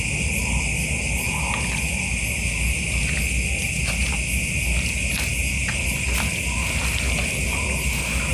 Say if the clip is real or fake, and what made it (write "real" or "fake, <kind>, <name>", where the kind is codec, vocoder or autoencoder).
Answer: real